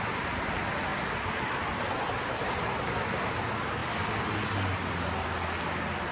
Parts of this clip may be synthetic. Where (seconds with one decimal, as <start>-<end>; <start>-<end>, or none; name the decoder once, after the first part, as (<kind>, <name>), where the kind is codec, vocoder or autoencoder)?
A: none